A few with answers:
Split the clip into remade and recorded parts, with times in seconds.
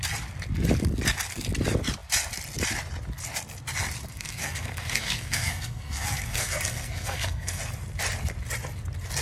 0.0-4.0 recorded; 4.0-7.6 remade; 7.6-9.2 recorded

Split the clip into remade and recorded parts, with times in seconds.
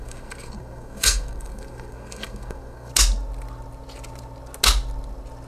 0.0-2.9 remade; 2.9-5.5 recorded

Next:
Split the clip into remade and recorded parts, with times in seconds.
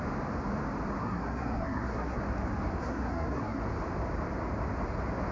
0.0-1.0 recorded; 1.0-2.2 remade; 2.2-2.8 recorded; 2.8-3.6 remade; 3.6-5.3 recorded